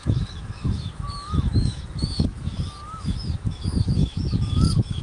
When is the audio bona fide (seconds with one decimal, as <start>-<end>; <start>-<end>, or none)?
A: none

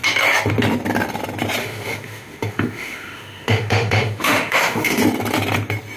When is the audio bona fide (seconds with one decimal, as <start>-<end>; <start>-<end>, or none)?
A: 0.0-1.6; 5.0-6.0

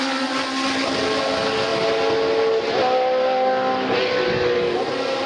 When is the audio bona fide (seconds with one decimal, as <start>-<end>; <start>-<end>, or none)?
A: 0.0-5.3

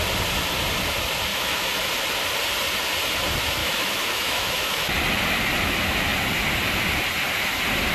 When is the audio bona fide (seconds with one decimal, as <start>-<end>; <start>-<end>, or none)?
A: 0.0-1.3; 1.9-3.6; 4.9-7.9

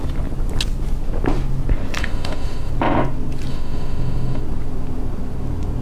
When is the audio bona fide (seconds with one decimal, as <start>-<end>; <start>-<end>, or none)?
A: 0.0-2.0; 2.7-3.5; 4.4-5.8

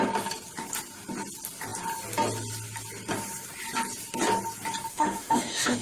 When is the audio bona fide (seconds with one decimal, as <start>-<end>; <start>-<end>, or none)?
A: 0.0-4.9